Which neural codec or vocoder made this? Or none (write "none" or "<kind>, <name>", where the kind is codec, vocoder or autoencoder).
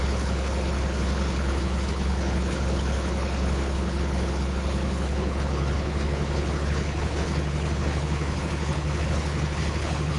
codec, HILCodec